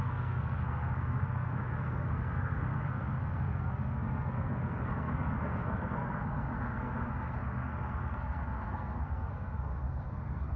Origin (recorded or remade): remade